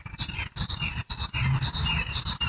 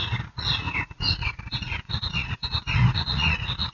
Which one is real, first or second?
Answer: first